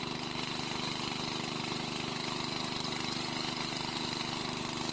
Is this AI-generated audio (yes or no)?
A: no